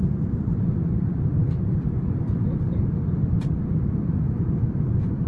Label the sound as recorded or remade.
recorded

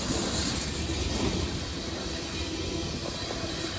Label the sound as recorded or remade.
recorded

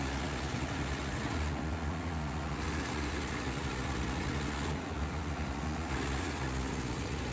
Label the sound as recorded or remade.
remade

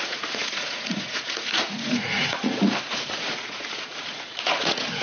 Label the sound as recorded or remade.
remade